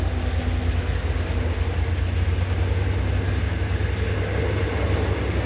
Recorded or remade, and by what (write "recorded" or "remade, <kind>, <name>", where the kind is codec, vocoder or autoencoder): recorded